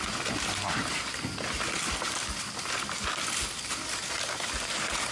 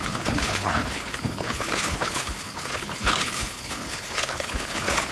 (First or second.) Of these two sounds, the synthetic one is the second